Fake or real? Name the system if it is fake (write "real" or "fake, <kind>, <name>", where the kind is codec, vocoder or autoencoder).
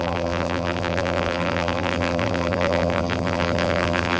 fake, vocoder, BigVGAN v2